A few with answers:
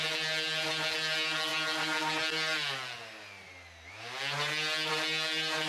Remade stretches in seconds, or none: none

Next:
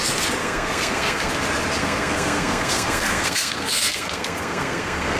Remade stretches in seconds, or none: 0.4-1.3; 1.8-5.2